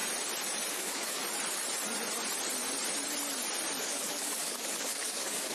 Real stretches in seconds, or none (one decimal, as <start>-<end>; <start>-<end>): 0.0-0.7; 1.2-3.8